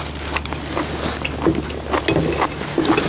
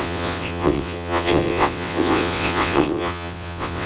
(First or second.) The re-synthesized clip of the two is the second